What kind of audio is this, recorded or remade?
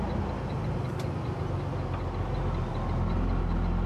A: recorded